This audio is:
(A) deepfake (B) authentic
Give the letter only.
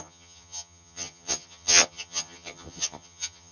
A